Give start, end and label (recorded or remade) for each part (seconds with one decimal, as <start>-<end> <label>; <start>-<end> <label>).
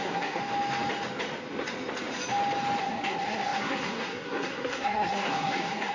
0.0-0.4 remade; 0.4-2.8 recorded; 2.8-5.9 remade